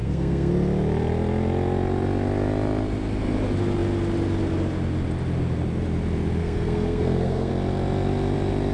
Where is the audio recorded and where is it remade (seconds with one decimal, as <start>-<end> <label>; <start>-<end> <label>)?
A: 0.0-0.5 remade; 0.5-6.4 recorded; 6.4-7.5 remade; 7.5-8.7 recorded